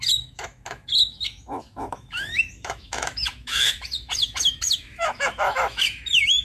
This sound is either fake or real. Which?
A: fake